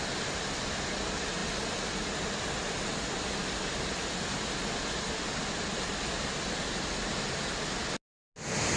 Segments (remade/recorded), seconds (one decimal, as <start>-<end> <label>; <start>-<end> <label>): 0.0-8.8 recorded